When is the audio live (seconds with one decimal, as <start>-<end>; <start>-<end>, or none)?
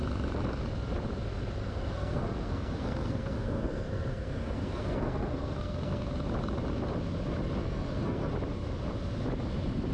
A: 0.0-1.6; 6.0-7.6; 8.3-9.9